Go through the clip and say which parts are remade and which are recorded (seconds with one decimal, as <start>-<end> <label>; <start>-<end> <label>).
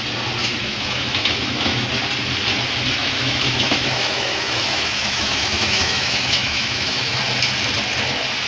0.0-0.4 recorded; 0.4-1.9 remade; 1.9-3.0 recorded; 3.0-7.2 remade; 7.2-8.5 recorded